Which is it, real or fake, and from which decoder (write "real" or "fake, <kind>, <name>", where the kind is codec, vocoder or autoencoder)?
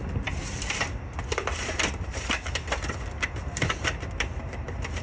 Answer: real